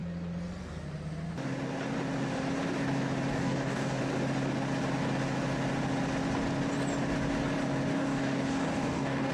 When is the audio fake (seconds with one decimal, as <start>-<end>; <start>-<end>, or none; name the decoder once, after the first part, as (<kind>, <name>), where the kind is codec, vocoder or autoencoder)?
3.3-4.0 (codec, DAC); 7.9-9.3